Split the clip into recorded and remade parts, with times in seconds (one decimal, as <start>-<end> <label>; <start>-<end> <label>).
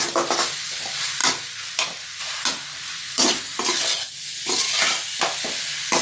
0.0-6.0 recorded